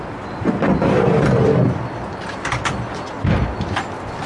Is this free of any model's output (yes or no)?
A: yes